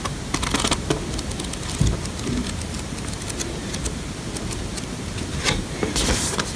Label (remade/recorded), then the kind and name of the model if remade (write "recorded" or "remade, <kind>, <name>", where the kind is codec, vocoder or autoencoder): recorded